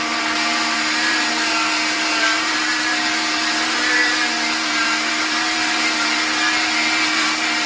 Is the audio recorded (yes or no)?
no